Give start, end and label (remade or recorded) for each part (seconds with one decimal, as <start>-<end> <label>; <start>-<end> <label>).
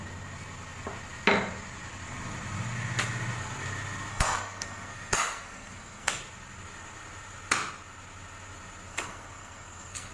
0.0-4.1 recorded; 4.1-6.2 remade; 6.2-8.9 recorded; 8.9-10.1 remade